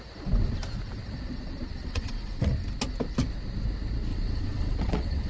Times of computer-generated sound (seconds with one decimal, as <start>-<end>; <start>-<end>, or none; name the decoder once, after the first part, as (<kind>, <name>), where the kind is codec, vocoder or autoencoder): 1.8-2.5 (vocoder, WaveNeXt); 4.1-5.3